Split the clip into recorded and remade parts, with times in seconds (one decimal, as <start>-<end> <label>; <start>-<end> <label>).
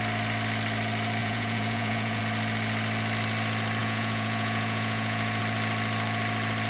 0.0-1.2 recorded; 1.2-2.2 remade; 2.2-3.8 recorded; 3.8-5.4 remade; 5.4-6.7 recorded